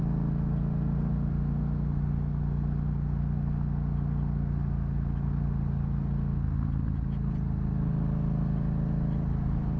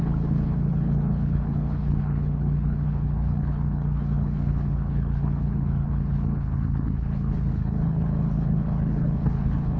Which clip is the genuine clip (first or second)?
first